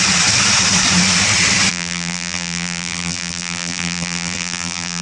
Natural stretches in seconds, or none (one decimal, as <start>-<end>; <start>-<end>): 0.0-1.7